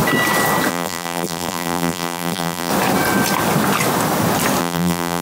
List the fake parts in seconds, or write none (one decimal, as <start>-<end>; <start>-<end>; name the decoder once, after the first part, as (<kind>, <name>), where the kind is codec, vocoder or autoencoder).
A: 0.7-2.7 (vocoder, BigVGAN v2); 4.6-5.2